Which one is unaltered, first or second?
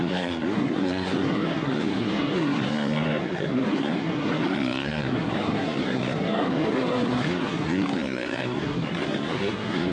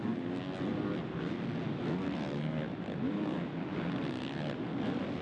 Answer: second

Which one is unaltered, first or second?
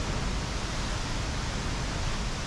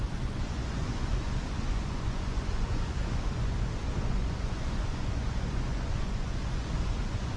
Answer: first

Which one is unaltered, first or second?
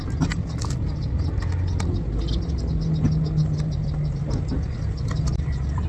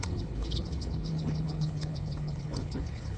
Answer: first